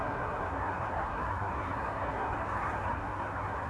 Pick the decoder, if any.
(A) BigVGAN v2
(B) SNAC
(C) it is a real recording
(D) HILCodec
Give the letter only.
B